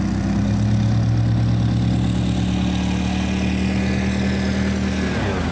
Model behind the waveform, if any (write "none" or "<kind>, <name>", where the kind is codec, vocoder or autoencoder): none